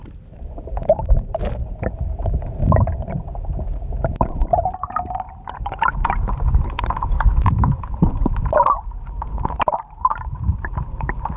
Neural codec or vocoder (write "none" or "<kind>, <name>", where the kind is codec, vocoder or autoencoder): vocoder, BigVGAN v2